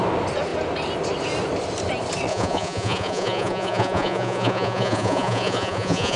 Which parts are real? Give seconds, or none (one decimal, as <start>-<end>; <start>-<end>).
0.0-2.3